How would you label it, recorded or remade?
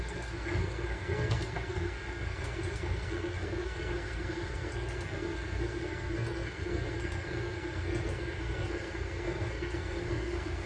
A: remade